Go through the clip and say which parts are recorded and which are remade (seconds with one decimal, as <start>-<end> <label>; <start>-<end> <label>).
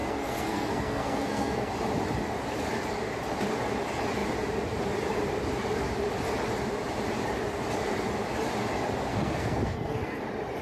0.0-1.7 remade; 1.7-9.1 recorded; 9.1-10.2 remade; 10.2-10.6 recorded